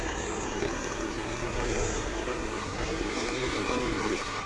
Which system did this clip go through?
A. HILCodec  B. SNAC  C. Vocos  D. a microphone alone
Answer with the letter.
B